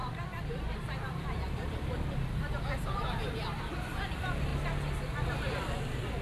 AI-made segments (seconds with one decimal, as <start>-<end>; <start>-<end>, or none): 0.0-4.5; 5.5-6.2